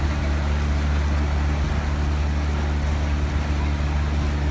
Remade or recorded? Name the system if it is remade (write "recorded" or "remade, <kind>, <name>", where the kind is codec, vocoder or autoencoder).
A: recorded